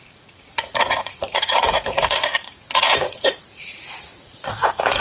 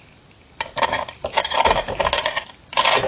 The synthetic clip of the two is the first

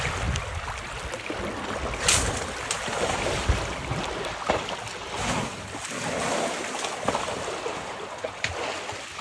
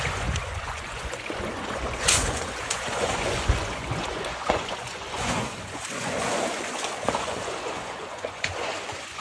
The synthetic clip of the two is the second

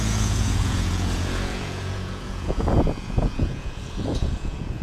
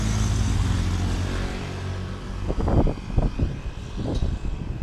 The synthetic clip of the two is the first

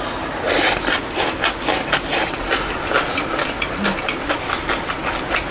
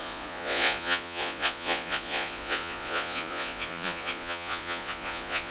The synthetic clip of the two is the second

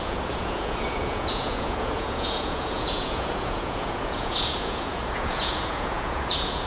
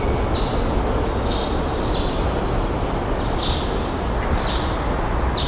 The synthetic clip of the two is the first